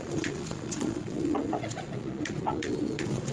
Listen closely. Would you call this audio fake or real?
fake